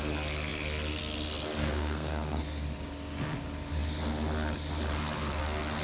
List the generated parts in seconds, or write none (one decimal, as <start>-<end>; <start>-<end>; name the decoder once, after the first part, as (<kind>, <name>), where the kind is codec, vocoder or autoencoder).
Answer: 1.6-2.4 (codec, SNAC)